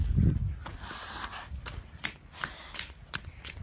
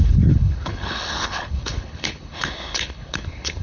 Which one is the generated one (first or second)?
second